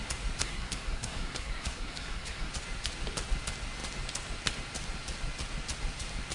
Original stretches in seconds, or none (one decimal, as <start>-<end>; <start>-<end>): 0.0-0.4; 2.5-6.3